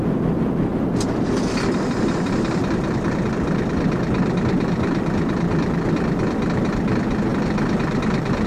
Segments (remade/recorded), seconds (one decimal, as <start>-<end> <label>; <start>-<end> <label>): 0.0-8.5 recorded